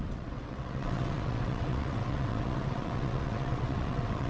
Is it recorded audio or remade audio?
remade